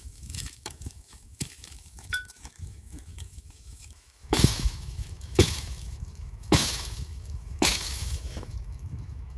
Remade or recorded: remade